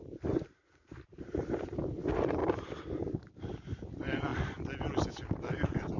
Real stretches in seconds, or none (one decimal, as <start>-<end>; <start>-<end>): 2.4-3.4; 4.3-5.1